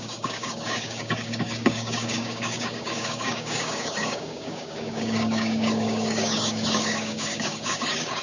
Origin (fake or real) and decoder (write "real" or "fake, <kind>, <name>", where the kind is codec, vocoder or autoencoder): fake, codec, DAC